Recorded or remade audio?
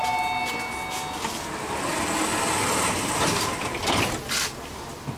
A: recorded